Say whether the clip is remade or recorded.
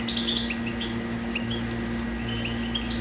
recorded